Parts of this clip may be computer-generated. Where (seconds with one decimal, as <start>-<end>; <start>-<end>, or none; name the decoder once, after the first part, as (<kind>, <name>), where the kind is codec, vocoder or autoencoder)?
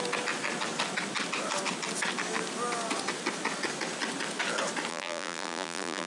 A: 4.9-6.1 (vocoder, BigVGAN v2)